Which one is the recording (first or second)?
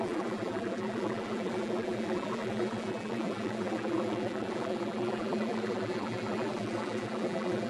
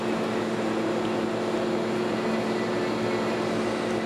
second